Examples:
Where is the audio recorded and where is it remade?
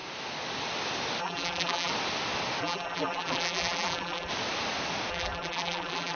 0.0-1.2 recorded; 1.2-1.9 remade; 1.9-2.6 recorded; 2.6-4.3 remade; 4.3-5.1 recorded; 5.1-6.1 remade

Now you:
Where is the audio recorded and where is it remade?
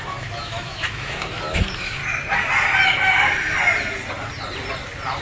0.0-2.0 remade; 2.0-5.2 recorded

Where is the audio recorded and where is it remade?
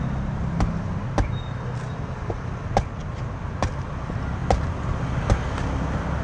0.0-6.2 recorded